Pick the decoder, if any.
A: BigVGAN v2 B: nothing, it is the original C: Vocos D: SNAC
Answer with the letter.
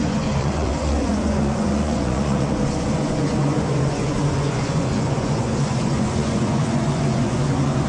C